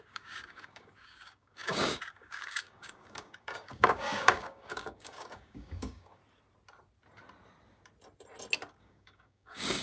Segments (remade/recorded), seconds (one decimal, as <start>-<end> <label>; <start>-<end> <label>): 0.0-6.2 remade; 6.2-8.8 recorded; 8.8-9.8 remade